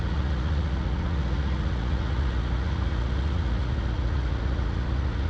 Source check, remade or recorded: remade